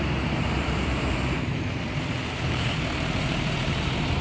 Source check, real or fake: fake